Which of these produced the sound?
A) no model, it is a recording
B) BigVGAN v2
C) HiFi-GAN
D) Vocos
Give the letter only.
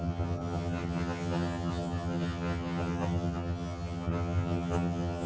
C